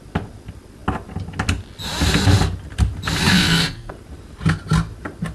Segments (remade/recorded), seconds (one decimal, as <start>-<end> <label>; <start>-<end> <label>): 0.0-3.3 recorded; 3.3-3.9 remade; 3.9-5.3 recorded

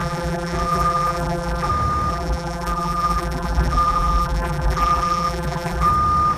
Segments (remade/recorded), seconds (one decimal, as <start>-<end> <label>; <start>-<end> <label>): 0.0-1.7 remade; 1.7-2.1 recorded; 2.1-5.9 remade; 5.9-6.4 recorded

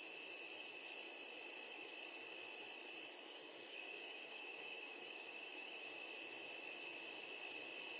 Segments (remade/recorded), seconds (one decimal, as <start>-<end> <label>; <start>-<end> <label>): 0.0-3.4 recorded; 3.4-6.0 remade; 6.0-8.0 recorded

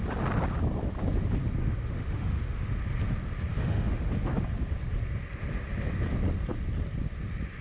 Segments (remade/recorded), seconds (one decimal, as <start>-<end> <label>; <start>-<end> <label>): 0.0-1.6 recorded; 1.6-2.7 remade; 2.7-3.5 recorded; 3.5-4.1 remade; 4.1-7.6 recorded

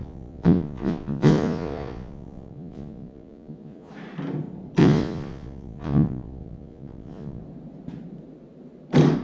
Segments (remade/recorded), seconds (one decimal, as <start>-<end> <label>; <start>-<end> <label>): 0.0-3.9 remade; 3.9-4.8 recorded; 4.8-7.4 remade; 7.4-9.2 recorded

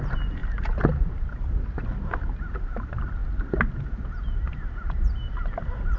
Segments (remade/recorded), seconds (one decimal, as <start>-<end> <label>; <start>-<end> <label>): 0.0-6.0 recorded